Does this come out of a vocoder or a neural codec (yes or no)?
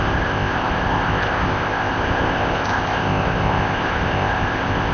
yes